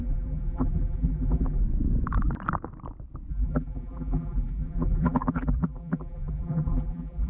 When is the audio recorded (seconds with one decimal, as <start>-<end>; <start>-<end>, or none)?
1.6-3.3